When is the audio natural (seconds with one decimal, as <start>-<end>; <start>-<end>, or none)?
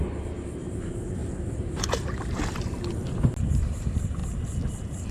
1.2-3.5; 4.2-5.1